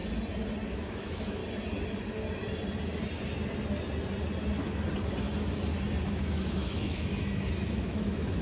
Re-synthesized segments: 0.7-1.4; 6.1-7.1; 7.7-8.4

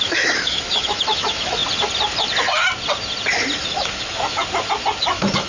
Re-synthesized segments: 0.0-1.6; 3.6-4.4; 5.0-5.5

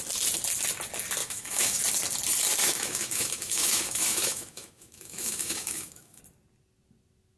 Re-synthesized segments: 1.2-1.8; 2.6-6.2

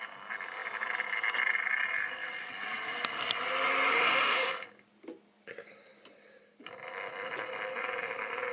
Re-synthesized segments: 3.9-4.5

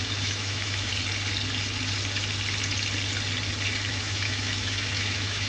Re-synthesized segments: 0.0-0.9; 3.9-5.5

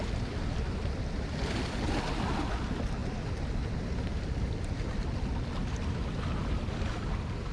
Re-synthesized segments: none

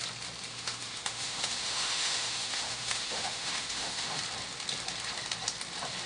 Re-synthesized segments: 0.5-4.2